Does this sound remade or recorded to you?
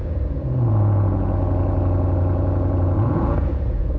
remade